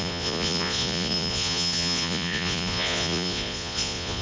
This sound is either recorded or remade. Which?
remade